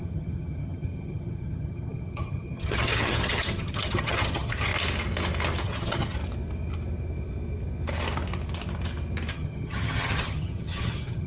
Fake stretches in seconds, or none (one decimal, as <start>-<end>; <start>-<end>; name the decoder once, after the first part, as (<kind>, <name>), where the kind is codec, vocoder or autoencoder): 0.0-4.7 (vocoder, HiFi-GAN); 5.6-6.2; 9.3-11.3